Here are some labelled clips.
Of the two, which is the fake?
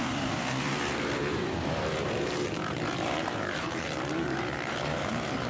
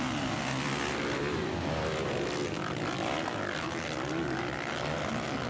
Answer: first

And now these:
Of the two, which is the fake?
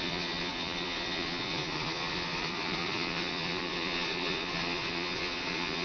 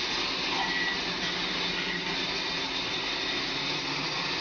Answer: first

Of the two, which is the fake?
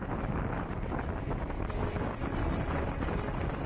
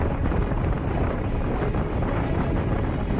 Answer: second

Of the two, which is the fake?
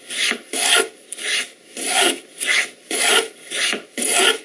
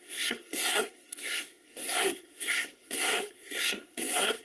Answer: second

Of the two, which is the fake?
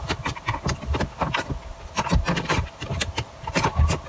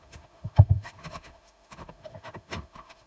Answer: second